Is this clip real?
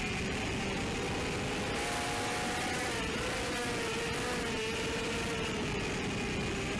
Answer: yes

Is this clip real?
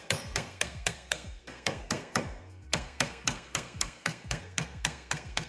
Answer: no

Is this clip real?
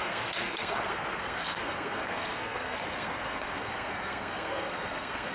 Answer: no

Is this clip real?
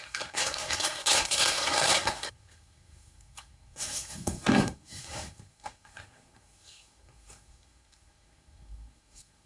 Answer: no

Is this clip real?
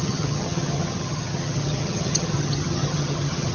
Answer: no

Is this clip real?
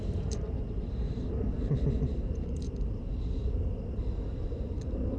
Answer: no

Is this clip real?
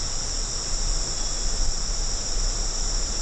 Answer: yes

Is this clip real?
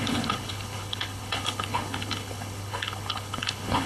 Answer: no